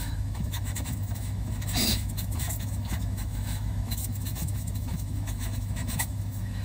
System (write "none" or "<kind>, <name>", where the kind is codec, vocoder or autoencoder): autoencoder, DAC-VAE